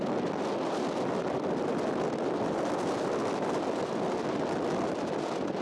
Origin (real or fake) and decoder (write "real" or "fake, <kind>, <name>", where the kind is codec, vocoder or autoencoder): real